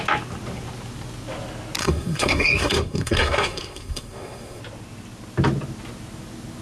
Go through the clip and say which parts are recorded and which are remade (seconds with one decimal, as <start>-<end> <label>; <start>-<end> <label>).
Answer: 0.0-1.8 recorded; 1.8-4.6 remade; 4.6-6.6 recorded